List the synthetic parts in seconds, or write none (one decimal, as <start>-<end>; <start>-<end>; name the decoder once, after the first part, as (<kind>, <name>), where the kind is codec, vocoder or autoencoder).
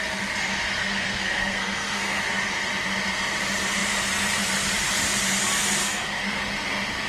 0.8-2.2 (codec, SNAC); 5.8-6.4